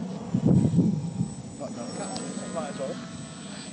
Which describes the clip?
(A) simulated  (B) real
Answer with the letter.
B